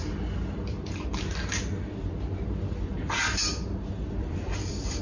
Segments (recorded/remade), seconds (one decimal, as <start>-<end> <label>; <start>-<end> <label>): 0.0-0.7 recorded; 0.7-1.1 remade; 1.1-4.1 recorded; 4.1-5.0 remade

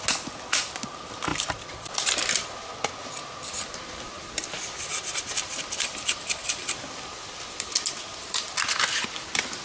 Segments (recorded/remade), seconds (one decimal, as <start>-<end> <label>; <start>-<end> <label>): 0.0-1.3 recorded; 1.3-1.9 remade; 1.9-5.0 recorded; 5.0-8.7 remade; 8.7-9.6 recorded

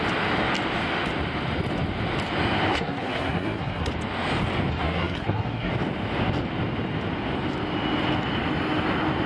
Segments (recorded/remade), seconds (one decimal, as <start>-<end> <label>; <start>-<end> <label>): 0.0-2.7 recorded; 2.7-3.9 remade; 3.9-4.7 recorded; 4.7-5.7 remade; 5.7-9.3 recorded

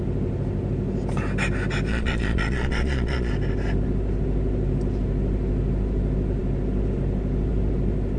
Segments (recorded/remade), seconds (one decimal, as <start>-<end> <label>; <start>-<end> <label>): 0.0-1.9 recorded; 1.9-3.3 remade; 3.3-8.2 recorded

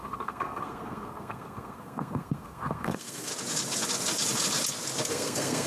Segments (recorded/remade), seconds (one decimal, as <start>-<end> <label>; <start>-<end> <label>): 0.0-3.3 remade; 3.3-5.1 recorded; 5.1-5.7 remade

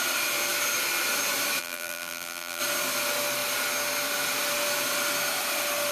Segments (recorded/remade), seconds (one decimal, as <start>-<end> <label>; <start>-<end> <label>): 0.0-1.6 recorded; 1.6-2.6 remade; 2.6-5.9 recorded

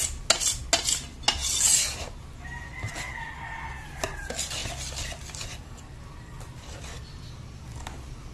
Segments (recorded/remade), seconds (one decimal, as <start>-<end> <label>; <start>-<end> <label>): 0.0-8.3 recorded

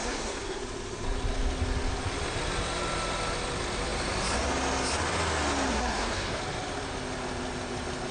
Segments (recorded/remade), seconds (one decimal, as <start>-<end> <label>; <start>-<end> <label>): 0.0-0.6 remade; 0.6-5.7 recorded; 5.7-6.4 remade; 6.4-8.1 recorded